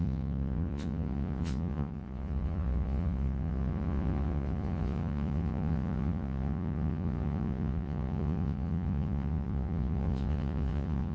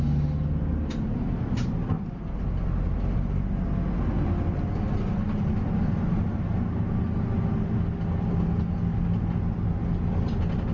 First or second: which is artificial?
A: first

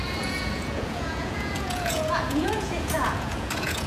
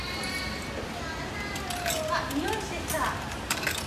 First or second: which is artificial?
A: first